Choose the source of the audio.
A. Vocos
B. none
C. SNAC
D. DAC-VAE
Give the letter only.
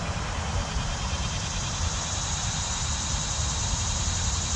B